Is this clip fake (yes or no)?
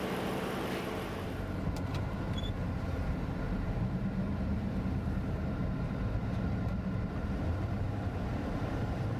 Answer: yes